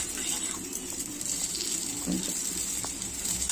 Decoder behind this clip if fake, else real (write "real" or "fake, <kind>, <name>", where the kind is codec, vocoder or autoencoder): fake, vocoder, BigVGAN v2